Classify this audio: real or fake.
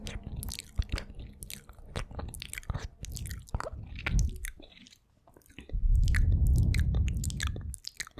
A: real